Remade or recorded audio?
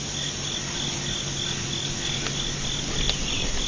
recorded